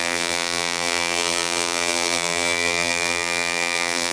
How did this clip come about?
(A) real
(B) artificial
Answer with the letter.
B